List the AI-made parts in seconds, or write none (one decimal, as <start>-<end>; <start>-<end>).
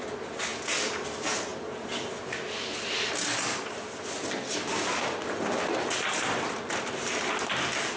none